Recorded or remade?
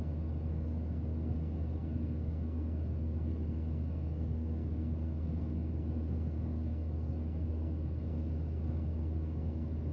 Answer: remade